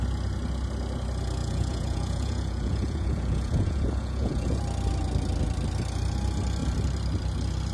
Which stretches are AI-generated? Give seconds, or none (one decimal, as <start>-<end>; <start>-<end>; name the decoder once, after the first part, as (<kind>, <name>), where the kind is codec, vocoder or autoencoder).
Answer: 1.4-4.6 (vocoder, Vocos)

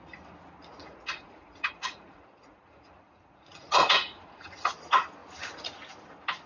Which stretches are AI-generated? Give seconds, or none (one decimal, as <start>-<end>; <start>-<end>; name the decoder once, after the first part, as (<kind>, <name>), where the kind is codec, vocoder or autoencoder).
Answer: 0.8-4.7 (vocoder, Vocos)

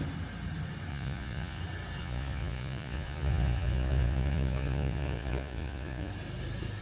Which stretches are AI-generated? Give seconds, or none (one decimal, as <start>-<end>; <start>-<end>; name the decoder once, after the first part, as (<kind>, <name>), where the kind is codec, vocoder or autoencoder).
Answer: 0.9-1.6 (vocoder, Vocos); 2.0-6.1

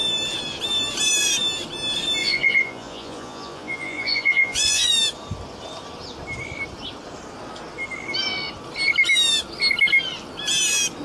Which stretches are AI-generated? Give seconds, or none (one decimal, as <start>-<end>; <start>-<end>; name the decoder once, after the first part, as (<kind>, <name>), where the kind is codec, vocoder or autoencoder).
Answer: 2.2-4.9 (vocoder, Vocos)

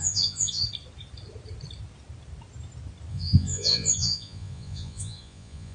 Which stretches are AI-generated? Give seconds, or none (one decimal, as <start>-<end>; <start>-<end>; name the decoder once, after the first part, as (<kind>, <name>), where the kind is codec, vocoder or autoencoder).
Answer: 0.0-0.6 (vocoder, Vocos); 3.1-5.7

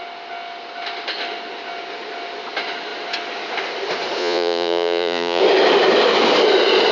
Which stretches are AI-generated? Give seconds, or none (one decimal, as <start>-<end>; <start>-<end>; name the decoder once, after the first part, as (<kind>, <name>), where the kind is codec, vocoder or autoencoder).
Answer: 4.2-5.4 (vocoder, Vocos)